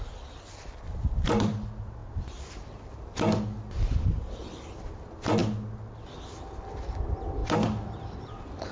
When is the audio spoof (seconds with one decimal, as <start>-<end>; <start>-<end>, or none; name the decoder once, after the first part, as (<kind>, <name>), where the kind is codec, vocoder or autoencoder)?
none